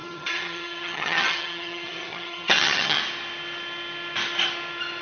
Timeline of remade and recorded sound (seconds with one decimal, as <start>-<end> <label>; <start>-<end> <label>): 0.0-3.0 remade; 3.0-5.0 recorded